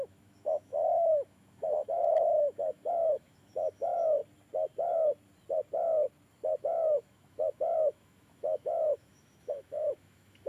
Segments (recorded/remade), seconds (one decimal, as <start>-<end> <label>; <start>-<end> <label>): 0.0-4.2 remade; 4.2-6.6 recorded; 6.6-10.5 remade

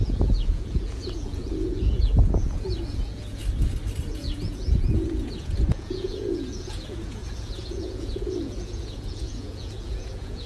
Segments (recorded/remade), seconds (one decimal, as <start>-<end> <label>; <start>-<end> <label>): 0.0-3.4 remade; 3.4-4.1 recorded; 4.1-10.5 remade

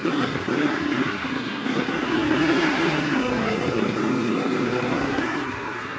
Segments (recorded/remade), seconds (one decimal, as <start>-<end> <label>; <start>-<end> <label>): 0.0-6.0 remade

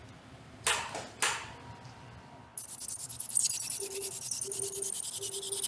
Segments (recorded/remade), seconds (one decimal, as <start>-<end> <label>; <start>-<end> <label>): 0.0-5.7 recorded

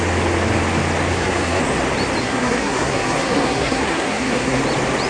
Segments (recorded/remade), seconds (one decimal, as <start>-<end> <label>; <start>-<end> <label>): 0.0-1.1 recorded; 1.1-1.6 remade; 1.6-2.2 recorded; 2.2-4.6 remade; 4.6-5.1 recorded